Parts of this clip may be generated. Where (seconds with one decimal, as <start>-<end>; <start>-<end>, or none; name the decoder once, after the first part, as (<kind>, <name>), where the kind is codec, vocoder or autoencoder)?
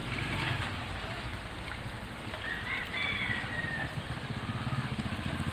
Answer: 0.0-1.4 (vocoder, BigVGAN v2); 2.8-3.6